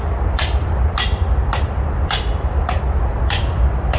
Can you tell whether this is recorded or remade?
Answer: recorded